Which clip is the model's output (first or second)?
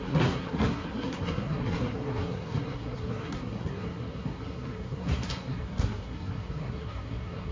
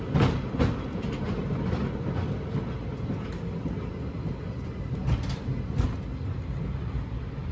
first